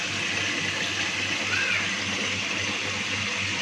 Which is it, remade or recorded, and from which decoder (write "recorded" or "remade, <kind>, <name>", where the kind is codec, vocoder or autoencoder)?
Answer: recorded